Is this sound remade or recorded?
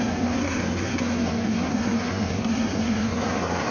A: remade